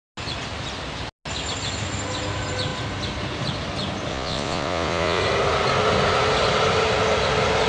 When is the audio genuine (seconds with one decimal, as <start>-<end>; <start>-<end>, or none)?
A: 0.0-4.1; 5.2-7.7